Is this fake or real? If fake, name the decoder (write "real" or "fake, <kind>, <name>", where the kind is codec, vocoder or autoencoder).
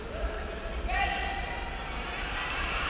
real